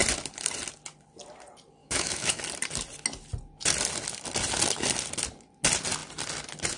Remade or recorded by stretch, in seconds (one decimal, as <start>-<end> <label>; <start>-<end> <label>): 0.0-1.8 recorded; 1.8-2.4 remade; 2.4-6.8 recorded